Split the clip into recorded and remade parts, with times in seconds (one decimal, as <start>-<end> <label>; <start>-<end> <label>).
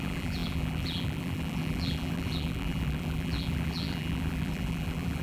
0.0-5.2 remade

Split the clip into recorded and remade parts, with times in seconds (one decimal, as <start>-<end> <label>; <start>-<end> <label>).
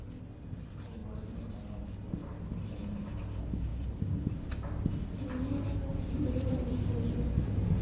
0.0-3.7 recorded; 3.7-4.4 remade; 4.4-5.9 recorded; 5.9-6.9 remade; 6.9-7.8 recorded